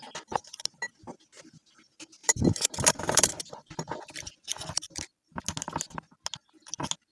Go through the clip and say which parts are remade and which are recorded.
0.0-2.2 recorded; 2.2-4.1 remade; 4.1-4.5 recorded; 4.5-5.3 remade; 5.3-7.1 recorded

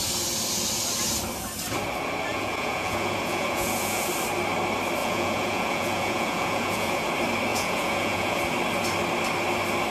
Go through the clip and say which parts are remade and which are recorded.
0.0-2.3 recorded; 2.3-4.1 remade; 4.1-5.0 recorded; 5.0-7.1 remade; 7.1-7.5 recorded; 7.5-8.4 remade; 8.4-9.9 recorded